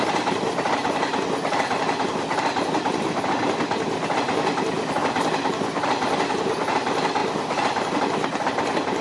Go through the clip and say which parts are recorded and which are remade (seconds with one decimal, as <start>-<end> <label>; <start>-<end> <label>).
0.0-0.8 remade; 0.8-2.1 recorded; 2.1-7.2 remade; 7.2-8.0 recorded; 8.0-9.0 remade